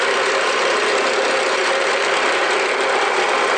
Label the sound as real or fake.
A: real